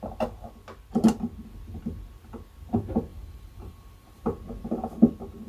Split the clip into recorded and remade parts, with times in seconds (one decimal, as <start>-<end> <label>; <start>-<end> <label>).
0.0-3.1 recorded; 3.1-4.2 remade; 4.2-5.5 recorded